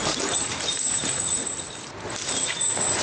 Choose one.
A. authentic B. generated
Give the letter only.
B